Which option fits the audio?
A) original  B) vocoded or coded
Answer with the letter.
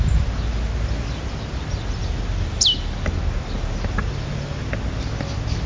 A